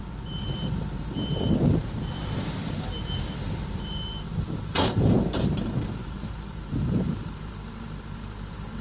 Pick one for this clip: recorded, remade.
remade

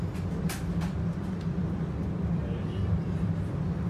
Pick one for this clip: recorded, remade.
remade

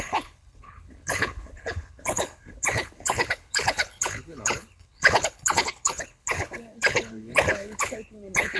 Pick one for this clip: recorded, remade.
remade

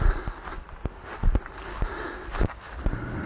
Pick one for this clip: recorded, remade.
recorded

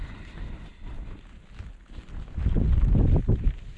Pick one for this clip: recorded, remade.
recorded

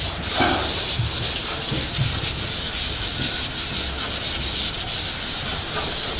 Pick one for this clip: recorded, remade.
recorded